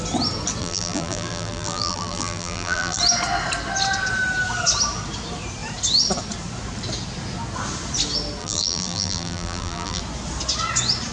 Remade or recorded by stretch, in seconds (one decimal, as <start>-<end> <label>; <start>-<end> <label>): 0.0-0.6 recorded; 0.6-3.0 remade; 3.0-8.4 recorded; 8.4-10.0 remade; 10.0-11.1 recorded